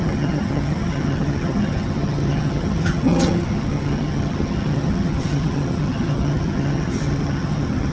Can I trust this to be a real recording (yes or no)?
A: no